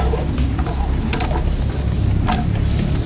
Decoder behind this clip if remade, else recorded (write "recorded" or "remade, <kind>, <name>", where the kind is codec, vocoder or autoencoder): recorded